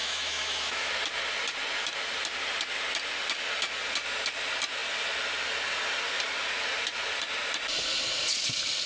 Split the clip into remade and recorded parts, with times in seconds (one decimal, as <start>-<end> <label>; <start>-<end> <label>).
0.0-0.9 remade; 0.9-8.9 recorded